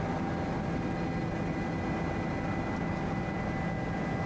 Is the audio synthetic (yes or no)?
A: no